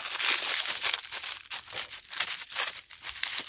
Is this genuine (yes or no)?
yes